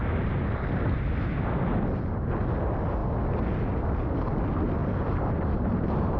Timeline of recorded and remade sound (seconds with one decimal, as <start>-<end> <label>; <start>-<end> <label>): 0.0-4.8 recorded; 4.8-6.2 remade